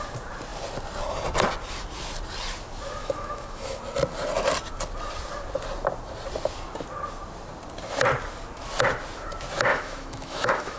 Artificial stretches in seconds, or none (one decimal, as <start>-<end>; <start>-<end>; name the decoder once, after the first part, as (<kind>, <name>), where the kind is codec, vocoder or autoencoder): 3.0-3.8 (autoencoder, DAC-VAE); 9.7-10.8